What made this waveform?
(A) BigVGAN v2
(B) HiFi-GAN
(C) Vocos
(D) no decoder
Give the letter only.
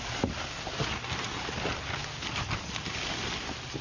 D